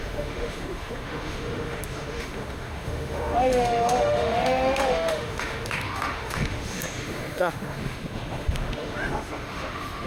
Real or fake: fake